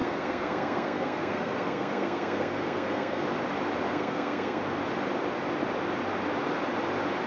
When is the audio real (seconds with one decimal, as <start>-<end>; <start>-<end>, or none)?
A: 3.2-3.9; 4.6-7.3